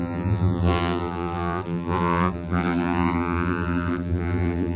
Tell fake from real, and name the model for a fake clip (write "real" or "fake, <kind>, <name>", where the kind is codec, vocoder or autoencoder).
fake, vocoder, BigVGAN v2